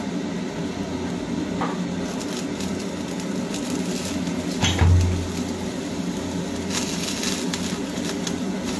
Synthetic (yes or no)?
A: no